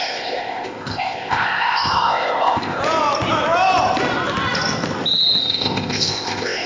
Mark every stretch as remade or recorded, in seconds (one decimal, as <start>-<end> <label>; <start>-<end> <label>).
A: 0.0-2.8 remade; 2.8-5.4 recorded; 5.4-6.7 remade